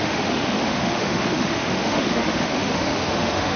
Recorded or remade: remade